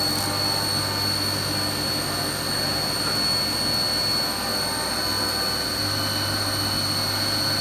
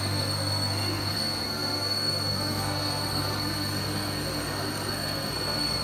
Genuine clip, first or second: first